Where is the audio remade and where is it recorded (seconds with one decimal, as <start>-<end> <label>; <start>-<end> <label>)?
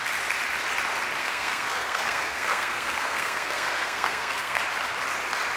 0.0-1.2 recorded; 1.2-4.6 remade; 4.6-5.6 recorded